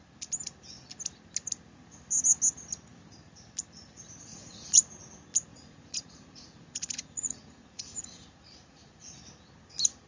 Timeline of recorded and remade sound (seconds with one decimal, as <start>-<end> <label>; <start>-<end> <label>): 0.0-4.3 recorded; 4.3-4.8 remade; 4.8-5.5 recorded; 5.5-9.2 remade; 9.2-10.1 recorded